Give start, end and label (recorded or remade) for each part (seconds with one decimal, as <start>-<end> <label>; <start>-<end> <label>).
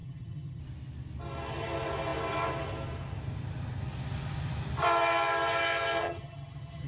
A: 0.0-0.6 remade; 0.6-6.0 recorded; 6.0-6.9 remade